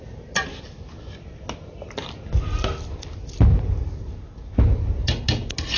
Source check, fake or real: real